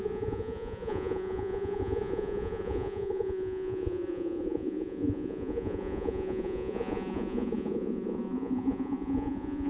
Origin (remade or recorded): remade